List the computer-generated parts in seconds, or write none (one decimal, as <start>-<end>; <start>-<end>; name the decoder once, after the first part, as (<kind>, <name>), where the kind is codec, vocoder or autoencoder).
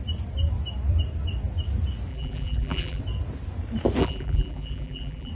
2.1-3.0 (vocoder, BigVGAN v2); 4.0-5.3